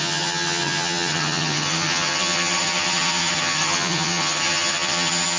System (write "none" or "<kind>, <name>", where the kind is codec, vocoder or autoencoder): vocoder, HiFi-GAN